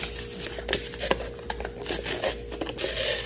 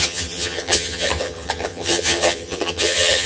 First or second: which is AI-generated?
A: second